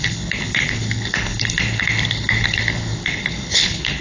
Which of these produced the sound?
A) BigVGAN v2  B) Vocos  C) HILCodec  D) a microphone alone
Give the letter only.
C